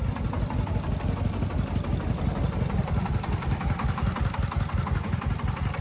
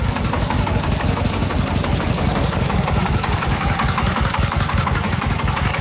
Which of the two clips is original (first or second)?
first